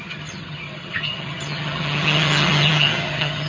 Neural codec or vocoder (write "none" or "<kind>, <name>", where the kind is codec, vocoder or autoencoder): vocoder, HiFi-GAN